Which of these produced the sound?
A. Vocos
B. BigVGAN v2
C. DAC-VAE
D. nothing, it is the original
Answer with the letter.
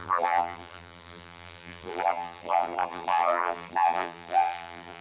B